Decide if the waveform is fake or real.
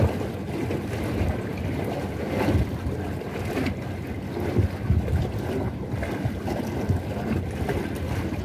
real